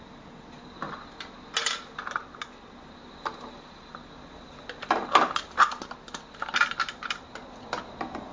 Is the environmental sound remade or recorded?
recorded